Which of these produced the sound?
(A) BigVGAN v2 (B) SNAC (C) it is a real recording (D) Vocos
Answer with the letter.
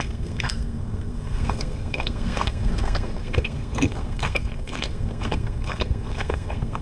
B